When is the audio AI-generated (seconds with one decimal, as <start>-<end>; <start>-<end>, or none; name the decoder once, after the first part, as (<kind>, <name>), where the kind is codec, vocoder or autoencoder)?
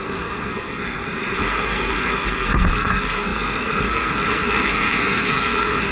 0.0-5.9 (codec, SNAC)